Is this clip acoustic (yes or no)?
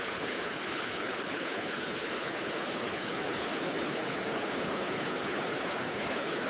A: no